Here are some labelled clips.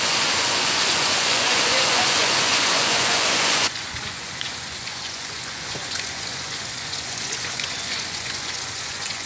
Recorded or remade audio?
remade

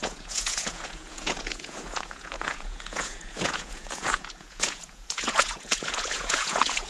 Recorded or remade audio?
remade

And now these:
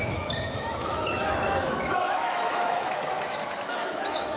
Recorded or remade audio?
remade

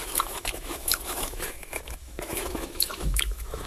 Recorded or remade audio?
remade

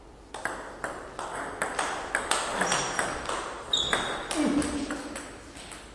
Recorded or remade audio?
recorded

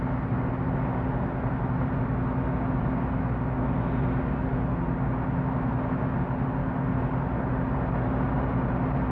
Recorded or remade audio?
recorded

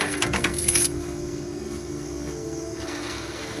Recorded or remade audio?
remade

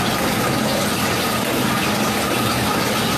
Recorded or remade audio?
recorded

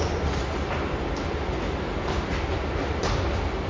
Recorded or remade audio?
recorded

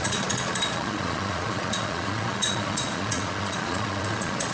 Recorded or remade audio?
remade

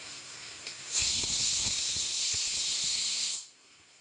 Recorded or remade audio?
remade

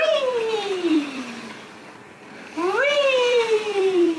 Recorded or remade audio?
remade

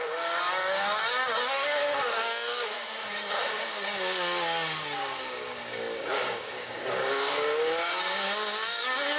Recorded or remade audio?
remade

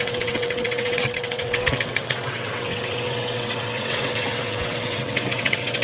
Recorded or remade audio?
remade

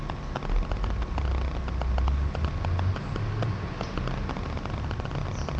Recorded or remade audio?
recorded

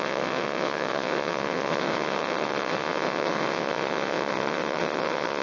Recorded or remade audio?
remade